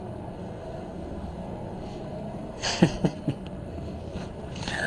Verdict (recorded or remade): remade